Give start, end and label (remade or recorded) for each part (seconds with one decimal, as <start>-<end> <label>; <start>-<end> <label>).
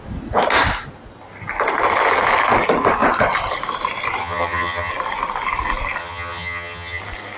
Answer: 0.0-4.2 recorded; 4.2-4.9 remade; 4.9-6.0 recorded; 6.0-7.0 remade; 7.0-7.4 recorded